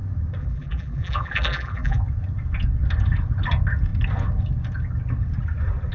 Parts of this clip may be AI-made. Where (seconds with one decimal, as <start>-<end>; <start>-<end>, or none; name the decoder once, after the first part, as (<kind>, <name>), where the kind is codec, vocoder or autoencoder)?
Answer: 0.4-2.0 (vocoder, BigVGAN v2)